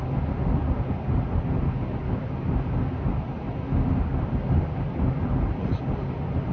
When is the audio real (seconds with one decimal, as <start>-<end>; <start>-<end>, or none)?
0.0-6.5